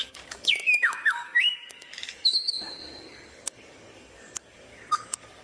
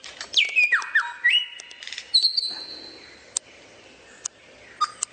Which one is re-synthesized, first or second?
first